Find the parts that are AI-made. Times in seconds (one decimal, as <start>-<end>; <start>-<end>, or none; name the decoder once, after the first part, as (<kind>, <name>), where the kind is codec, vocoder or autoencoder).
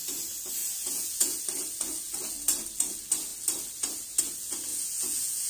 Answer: 0.6-1.4 (vocoder, Vocos); 4.7-5.5